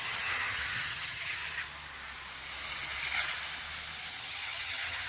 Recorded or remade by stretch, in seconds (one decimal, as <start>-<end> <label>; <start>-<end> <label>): 0.0-1.4 remade; 1.4-4.1 recorded; 4.1-5.1 remade